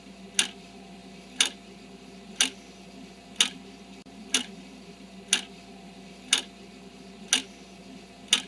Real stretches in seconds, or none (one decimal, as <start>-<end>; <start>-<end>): 0.0-8.5